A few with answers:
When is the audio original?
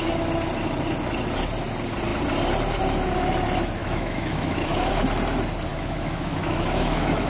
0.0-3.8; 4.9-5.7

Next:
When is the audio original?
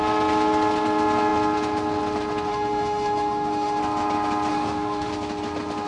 0.0-2.5; 3.8-4.5; 5.1-5.9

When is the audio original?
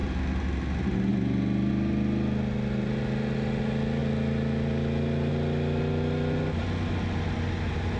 0.0-8.0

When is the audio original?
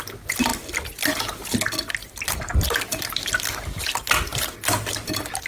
0.0-5.5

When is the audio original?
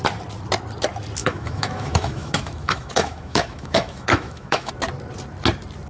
0.0-1.2; 4.7-5.9